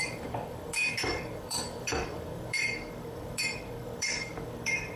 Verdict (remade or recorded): remade